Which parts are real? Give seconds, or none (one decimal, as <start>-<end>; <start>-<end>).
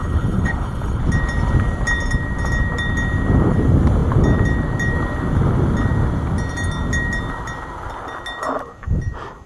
1.0-9.5